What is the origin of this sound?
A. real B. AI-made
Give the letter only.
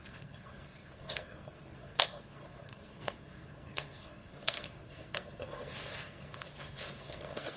B